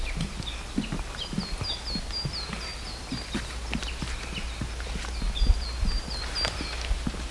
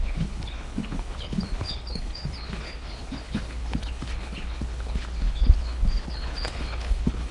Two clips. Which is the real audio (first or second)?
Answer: first